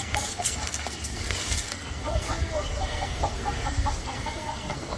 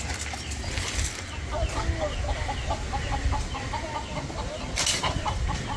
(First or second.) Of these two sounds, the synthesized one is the first